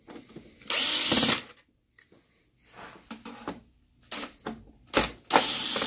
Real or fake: real